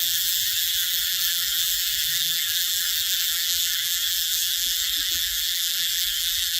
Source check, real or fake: fake